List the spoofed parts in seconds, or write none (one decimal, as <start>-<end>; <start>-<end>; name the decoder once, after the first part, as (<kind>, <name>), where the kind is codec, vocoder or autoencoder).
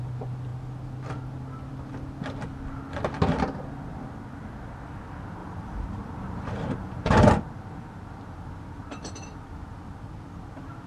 5.4-7.3 (vocoder, BigVGAN v2); 8.8-9.4